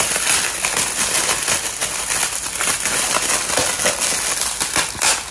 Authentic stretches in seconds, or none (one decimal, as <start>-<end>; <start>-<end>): 0.0-5.3